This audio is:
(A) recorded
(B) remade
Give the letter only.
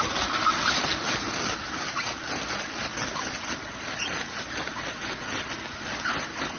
A